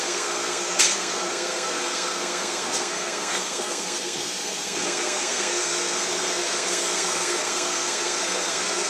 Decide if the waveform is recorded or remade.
remade